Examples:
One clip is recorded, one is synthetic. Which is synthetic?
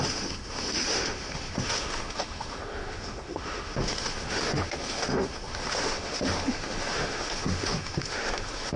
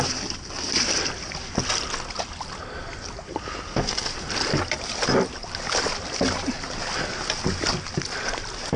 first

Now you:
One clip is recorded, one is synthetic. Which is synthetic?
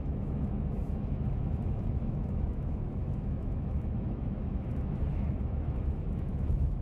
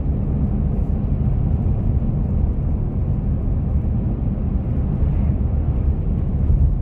first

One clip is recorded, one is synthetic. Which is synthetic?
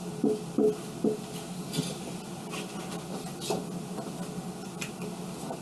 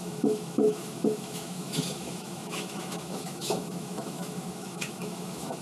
second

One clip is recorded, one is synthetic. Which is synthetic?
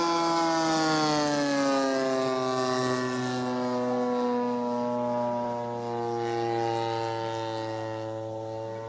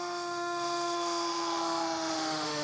second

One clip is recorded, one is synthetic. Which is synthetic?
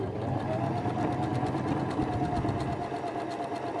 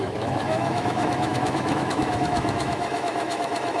second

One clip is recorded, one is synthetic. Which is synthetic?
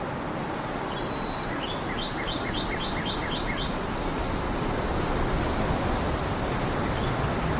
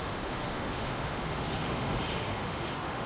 second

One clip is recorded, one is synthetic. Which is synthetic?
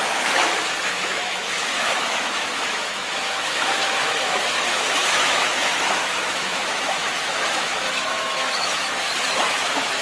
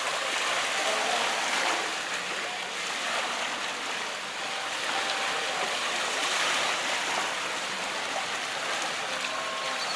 first